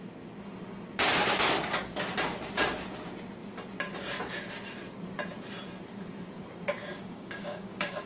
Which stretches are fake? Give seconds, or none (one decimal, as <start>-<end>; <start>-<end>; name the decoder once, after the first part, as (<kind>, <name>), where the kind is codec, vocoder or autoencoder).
6.9-8.1 (codec, DAC)